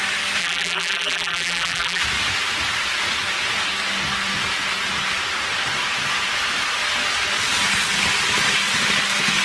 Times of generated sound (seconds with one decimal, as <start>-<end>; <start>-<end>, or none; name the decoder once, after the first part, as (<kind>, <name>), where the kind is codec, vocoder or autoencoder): 0.4-2.0 (vocoder, BigVGAN v2)